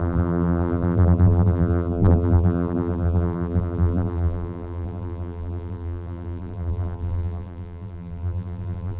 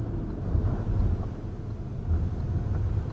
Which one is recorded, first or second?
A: second